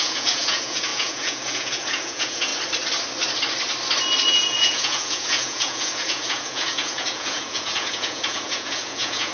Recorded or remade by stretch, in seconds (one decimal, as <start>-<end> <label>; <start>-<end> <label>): 0.0-2.5 remade; 2.5-4.3 recorded; 4.3-9.3 remade